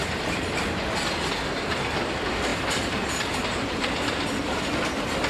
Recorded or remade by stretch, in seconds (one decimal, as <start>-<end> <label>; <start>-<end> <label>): 0.0-2.5 recorded; 2.5-4.6 remade; 4.6-5.3 recorded